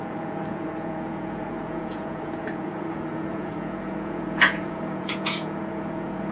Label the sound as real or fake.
fake